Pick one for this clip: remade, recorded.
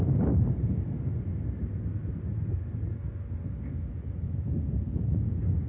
recorded